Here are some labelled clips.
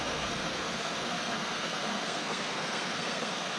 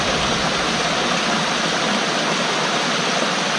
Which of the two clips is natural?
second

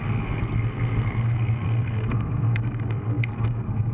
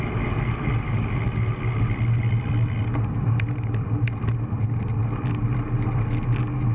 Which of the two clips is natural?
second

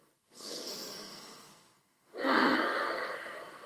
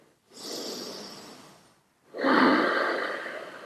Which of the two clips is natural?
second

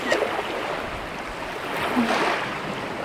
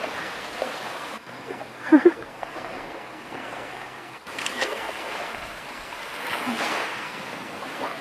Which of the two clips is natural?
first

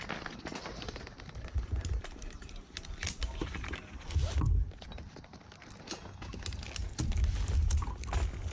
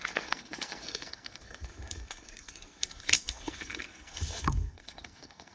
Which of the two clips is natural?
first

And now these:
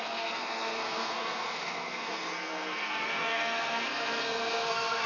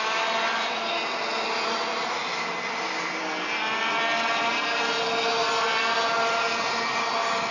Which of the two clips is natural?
second